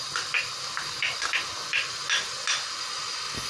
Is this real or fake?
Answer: real